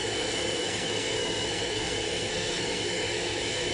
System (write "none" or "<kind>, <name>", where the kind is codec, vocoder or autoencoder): codec, SNAC